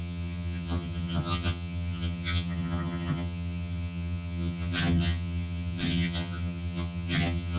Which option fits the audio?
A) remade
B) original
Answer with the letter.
A